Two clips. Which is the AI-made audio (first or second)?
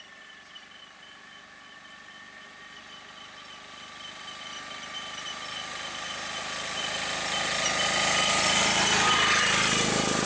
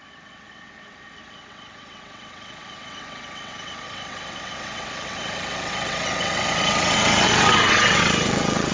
second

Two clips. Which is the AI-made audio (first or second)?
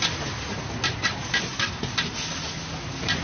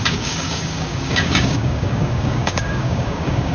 second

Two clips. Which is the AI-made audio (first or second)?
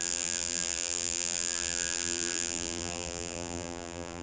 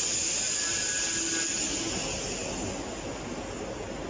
first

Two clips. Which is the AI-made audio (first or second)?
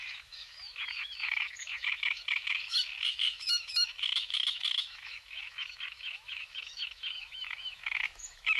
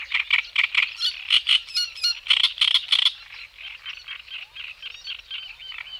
first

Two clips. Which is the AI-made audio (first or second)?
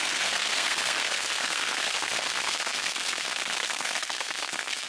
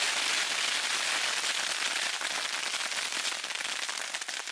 first